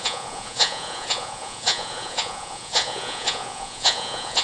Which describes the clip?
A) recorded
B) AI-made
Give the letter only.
B